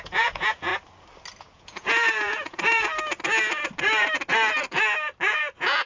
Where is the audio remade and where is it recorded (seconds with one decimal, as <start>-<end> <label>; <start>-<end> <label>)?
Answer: 0.0-0.7 remade; 0.7-1.4 recorded; 1.4-2.9 remade; 2.9-5.3 recorded; 5.3-5.9 remade